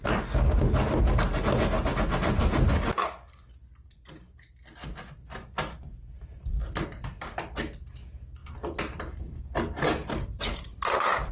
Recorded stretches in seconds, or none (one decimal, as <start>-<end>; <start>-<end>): 0.0-8.4